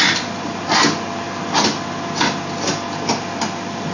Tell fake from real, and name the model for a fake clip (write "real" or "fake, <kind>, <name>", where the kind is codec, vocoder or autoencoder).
real